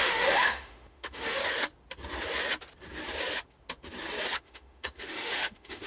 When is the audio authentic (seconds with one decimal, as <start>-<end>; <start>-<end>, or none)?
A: 1.4-4.4

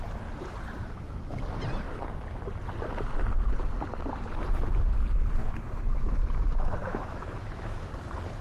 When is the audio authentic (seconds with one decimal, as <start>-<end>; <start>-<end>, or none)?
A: 0.0-0.8; 1.4-5.4; 6.1-6.8; 7.9-8.4